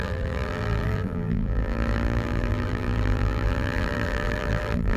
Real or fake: fake